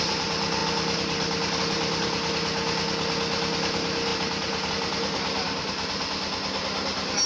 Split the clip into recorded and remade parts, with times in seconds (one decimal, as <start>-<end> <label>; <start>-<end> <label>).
0.0-7.3 recorded